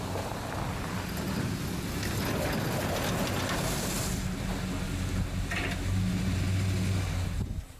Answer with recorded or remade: recorded